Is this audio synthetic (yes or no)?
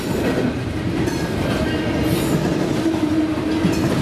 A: no